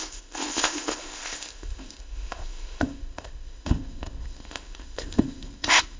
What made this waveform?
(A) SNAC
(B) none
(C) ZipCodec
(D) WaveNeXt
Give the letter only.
C